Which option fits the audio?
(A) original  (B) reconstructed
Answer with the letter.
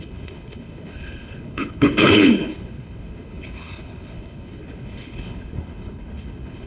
B